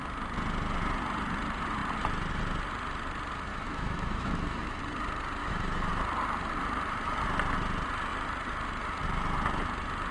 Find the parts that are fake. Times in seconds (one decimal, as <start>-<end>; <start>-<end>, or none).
3.5-4.8; 5.4-5.9